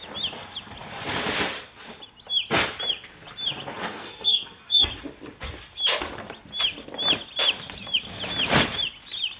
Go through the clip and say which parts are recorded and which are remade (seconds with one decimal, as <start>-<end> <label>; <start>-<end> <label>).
0.0-3.8 recorded; 3.8-4.9 remade; 4.9-9.4 recorded